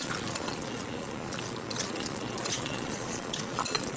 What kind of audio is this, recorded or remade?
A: remade